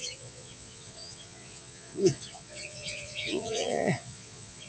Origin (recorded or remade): remade